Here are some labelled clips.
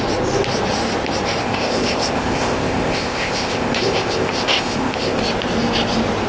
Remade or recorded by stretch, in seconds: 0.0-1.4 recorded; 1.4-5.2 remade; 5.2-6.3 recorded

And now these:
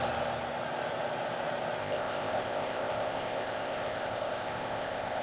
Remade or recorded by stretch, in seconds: 0.0-1.8 recorded; 1.8-5.2 remade

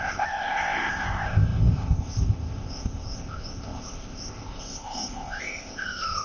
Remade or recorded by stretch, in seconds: 0.0-6.2 remade

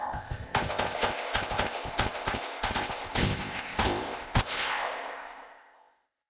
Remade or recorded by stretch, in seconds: 0.0-6.3 remade

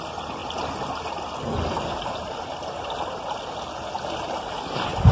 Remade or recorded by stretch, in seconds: 0.0-5.1 recorded

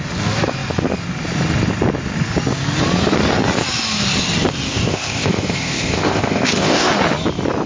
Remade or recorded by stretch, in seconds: 0.0-4.7 recorded; 4.7-6.9 remade; 6.9-7.7 recorded